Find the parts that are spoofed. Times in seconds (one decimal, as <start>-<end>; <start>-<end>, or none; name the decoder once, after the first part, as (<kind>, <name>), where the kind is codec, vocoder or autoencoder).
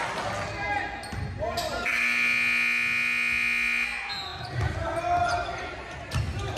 none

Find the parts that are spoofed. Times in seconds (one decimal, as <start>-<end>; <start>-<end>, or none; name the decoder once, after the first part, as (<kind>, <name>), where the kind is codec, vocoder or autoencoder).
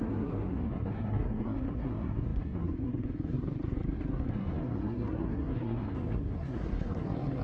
0.0-7.4 (codec, SNAC)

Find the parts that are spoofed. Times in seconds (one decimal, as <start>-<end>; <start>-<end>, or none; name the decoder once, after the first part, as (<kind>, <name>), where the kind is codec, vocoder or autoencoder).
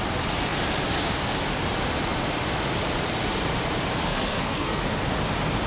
4.0-4.8 (codec, SNAC)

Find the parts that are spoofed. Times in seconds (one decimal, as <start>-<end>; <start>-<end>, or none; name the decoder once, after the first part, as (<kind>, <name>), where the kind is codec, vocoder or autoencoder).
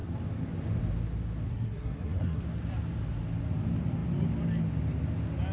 1.5-2.4 (codec, SNAC)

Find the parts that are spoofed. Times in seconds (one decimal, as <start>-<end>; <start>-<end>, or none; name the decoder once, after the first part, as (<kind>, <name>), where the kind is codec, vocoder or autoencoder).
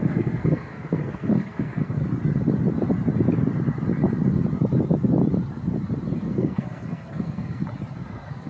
0.0-2.0 (codec, SNAC); 6.2-7.6; 8.1-8.5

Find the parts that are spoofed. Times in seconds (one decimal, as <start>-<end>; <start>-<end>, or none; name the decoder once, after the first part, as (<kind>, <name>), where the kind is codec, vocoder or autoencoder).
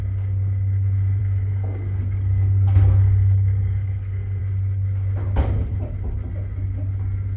1.2-4.4 (codec, SNAC)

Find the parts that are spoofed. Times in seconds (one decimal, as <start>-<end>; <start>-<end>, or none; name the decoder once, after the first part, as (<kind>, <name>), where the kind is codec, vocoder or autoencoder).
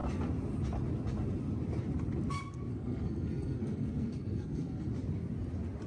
2.7-4.9 (codec, SNAC)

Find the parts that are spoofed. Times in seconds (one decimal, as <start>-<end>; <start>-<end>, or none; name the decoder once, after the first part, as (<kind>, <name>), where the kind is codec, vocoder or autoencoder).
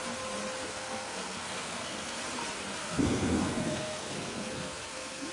0.6-2.2 (codec, SNAC); 2.8-5.3